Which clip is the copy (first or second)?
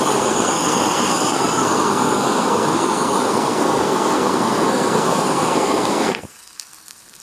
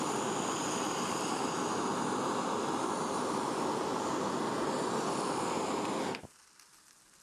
first